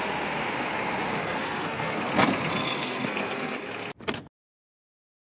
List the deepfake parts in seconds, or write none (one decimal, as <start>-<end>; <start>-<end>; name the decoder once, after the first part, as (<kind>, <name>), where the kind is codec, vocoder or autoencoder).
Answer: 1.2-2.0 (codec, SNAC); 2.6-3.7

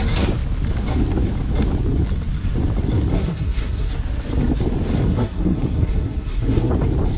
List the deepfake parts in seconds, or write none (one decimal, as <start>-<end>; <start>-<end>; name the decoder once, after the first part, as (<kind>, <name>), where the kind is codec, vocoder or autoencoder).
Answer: 3.1-3.9 (codec, SNAC); 5.1-6.7

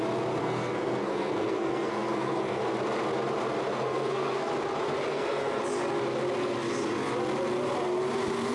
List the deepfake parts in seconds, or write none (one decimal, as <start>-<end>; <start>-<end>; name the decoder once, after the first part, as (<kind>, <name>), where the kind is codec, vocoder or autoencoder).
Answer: 0.4-2.6 (codec, SNAC); 3.7-4.5; 5.1-5.6